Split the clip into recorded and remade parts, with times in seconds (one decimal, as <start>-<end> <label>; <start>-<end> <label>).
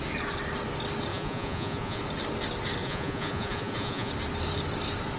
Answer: 0.0-1.1 recorded; 1.1-2.0 remade; 2.0-2.8 recorded; 2.8-4.1 remade; 4.1-5.2 recorded